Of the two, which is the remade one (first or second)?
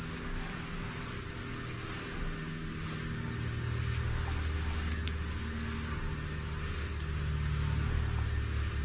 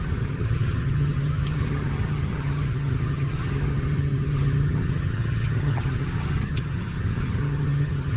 second